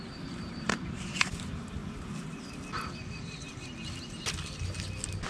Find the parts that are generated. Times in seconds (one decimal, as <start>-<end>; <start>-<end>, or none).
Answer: 0.0-1.8